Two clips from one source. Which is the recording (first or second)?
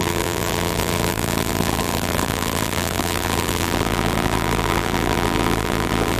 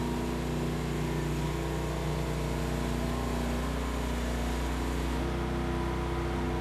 second